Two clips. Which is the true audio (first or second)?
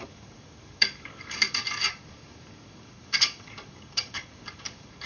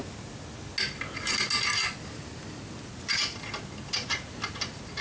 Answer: second